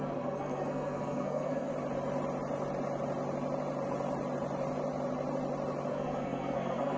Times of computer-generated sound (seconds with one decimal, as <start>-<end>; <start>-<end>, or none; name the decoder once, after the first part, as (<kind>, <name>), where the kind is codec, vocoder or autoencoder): 0.0-1.7 (codec, SNAC); 5.9-7.0